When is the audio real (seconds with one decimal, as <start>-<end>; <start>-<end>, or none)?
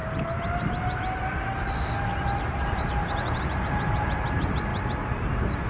0.0-3.4; 4.7-5.7